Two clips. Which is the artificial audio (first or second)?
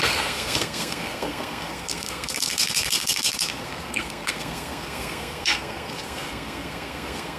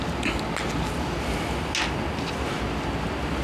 first